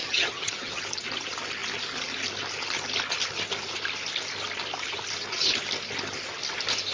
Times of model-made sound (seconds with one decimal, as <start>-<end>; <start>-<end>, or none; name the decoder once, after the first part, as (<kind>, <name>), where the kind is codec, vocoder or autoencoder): 0.0-0.8 (vocoder, HiFi-GAN)